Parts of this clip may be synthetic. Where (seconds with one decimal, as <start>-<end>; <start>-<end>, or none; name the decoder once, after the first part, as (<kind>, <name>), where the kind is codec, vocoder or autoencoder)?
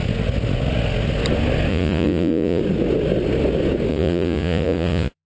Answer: 1.7-2.6 (vocoder, Vocos); 3.9-5.3